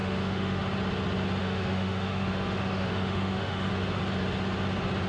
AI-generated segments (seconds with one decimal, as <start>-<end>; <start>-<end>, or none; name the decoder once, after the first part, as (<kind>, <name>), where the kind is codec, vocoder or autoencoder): 0.0-0.6 (autoencoder, DAC-VAE); 1.4-3.7